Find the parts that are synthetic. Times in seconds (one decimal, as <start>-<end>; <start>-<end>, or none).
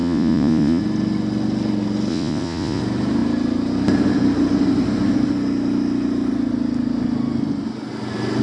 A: 0.0-0.8; 2.1-2.8